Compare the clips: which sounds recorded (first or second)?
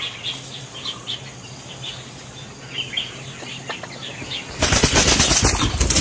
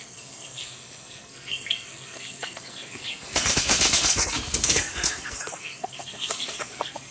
first